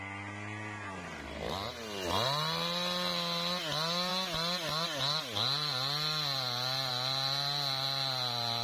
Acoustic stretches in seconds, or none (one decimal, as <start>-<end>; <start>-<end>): 0.0-8.6